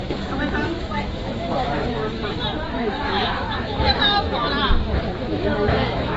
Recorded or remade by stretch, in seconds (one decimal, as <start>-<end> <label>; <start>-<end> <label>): 0.0-2.0 remade; 2.0-2.7 recorded; 2.7-4.4 remade; 4.4-5.3 recorded; 5.3-6.2 remade